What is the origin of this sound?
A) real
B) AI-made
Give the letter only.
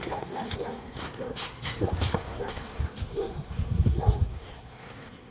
B